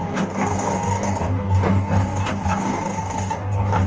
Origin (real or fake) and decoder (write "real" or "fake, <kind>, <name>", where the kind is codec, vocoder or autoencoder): fake, codec, DAC